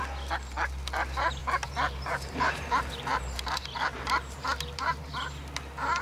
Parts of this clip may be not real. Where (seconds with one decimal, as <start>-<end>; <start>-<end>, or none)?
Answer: 1.4-5.0